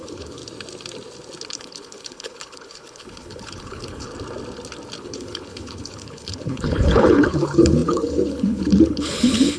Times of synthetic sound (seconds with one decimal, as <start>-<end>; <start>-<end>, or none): 0.0-0.4; 1.5-4.1; 5.0-9.6